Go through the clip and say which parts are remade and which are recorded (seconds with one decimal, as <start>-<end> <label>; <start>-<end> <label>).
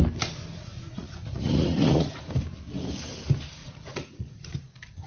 0.0-0.5 recorded; 0.5-2.2 remade; 2.2-3.6 recorded; 3.6-4.4 remade; 4.4-5.1 recorded